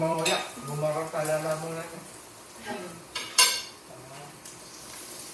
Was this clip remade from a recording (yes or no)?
yes